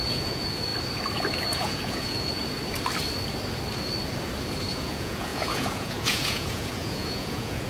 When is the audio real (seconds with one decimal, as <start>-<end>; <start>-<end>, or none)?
0.7-1.6; 2.4-4.7